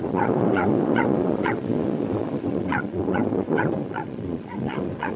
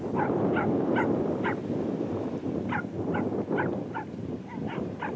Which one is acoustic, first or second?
second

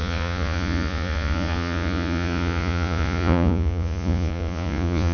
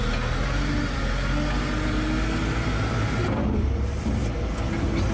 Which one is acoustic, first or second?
second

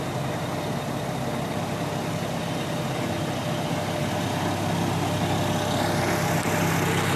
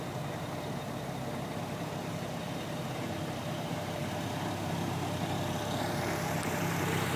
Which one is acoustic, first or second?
first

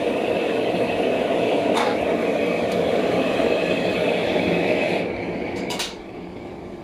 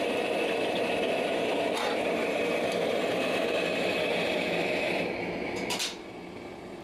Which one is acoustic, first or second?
second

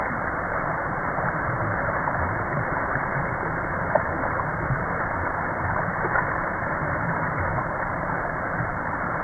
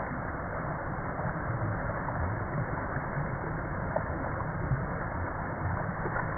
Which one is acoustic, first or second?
second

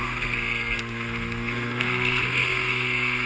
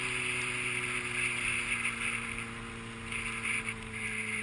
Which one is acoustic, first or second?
second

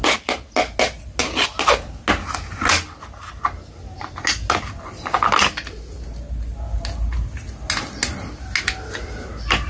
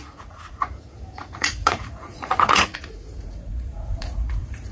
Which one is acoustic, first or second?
first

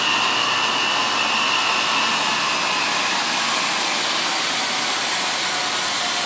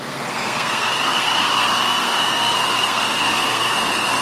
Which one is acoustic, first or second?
first